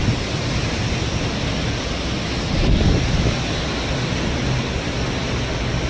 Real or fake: real